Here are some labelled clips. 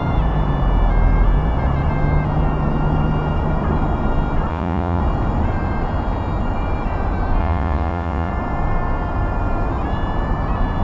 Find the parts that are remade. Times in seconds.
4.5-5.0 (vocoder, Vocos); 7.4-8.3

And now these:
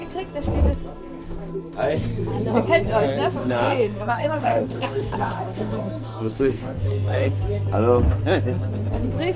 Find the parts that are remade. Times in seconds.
3.4-7.3 (codec, SNAC)

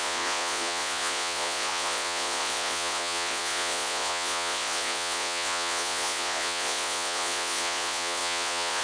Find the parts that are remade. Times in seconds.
0.0-8.8 (vocoder, Vocos)

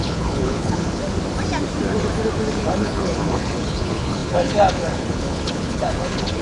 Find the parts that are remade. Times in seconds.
0.0-1.0 (codec, HILCodec); 2.6-6.4

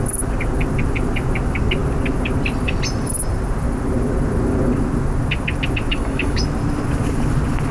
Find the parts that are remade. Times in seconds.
5.9-6.4 (codec, DAC)

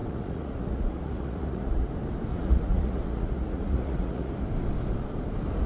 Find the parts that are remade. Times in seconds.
0.0-1.9 (vocoder, Vocos); 2.3-4.3

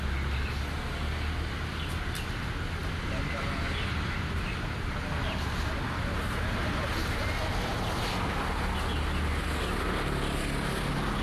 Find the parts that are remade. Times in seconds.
none

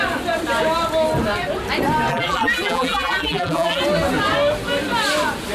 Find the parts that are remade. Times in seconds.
2.1-3.8 (vocoder, BigVGAN v2)